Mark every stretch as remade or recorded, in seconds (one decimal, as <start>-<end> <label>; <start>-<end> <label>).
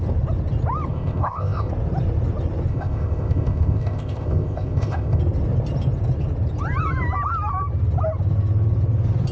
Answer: 0.0-0.9 recorded; 0.9-1.7 remade; 1.7-2.7 recorded; 2.7-5.2 remade; 5.2-9.3 recorded